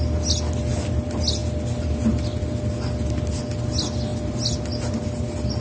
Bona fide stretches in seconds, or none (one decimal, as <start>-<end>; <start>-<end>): 0.0-5.6

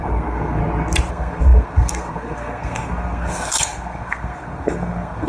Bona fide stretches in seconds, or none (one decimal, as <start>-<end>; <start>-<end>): 0.6-1.1

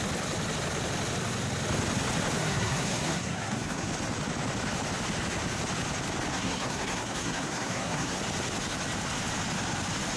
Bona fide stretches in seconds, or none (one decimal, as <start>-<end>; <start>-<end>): 0.0-2.4; 3.9-6.3; 8.2-10.2

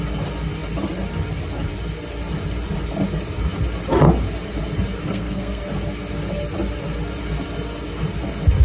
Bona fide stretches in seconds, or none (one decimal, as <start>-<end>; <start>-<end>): 0.0-5.0; 5.6-8.6

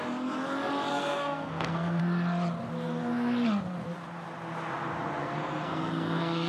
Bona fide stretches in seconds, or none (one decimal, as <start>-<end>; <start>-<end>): 0.0-0.9; 2.0-5.2